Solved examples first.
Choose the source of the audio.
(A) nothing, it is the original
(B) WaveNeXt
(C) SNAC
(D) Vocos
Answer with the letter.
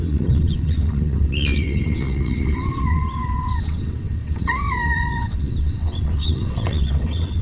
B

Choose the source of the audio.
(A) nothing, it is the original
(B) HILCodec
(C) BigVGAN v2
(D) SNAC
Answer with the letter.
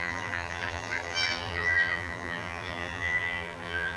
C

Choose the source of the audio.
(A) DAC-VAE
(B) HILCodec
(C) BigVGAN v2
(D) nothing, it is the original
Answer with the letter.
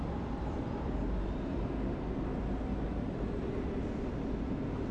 D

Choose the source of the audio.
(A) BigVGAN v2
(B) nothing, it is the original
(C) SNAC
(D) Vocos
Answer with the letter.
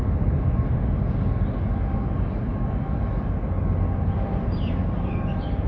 B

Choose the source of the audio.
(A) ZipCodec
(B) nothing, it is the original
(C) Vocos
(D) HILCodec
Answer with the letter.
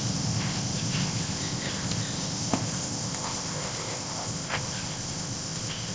A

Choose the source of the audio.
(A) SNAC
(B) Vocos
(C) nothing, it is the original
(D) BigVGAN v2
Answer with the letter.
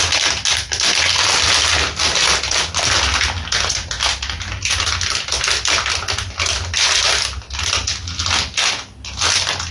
C